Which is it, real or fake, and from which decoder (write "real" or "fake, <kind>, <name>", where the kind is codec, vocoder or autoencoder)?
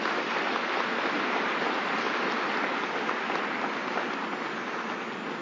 real